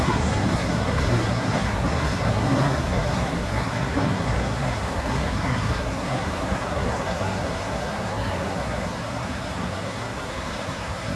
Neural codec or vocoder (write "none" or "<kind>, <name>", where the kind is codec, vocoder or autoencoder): codec, SNAC